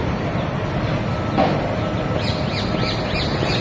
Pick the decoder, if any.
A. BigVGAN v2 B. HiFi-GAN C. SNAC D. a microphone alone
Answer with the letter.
D